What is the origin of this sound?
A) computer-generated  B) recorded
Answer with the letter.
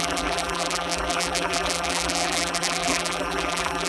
A